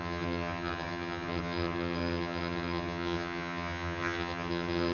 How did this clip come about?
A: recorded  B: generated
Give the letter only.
B